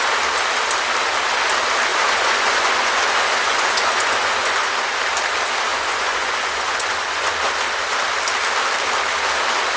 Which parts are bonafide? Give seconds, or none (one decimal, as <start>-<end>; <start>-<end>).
0.0-1.9; 4.7-5.7; 7.3-9.8